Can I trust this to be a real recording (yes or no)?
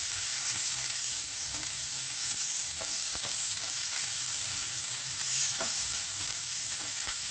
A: no